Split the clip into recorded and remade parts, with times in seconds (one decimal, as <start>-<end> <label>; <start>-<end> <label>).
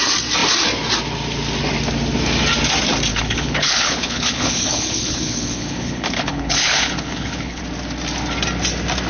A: 0.0-3.1 recorded; 3.1-7.6 remade; 7.6-9.1 recorded